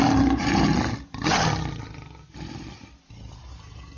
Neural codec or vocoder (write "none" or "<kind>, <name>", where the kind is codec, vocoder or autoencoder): none